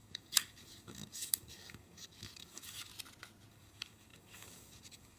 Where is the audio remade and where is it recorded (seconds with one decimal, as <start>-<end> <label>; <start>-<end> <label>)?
0.0-2.9 remade; 2.9-3.5 recorded; 3.5-5.2 remade